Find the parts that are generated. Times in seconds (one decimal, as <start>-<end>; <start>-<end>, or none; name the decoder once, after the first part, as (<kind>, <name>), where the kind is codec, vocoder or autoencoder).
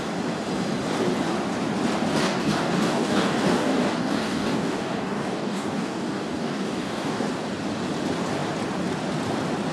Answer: 2.2-7.3 (codec, DAC)